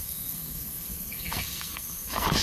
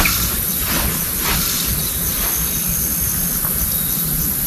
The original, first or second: second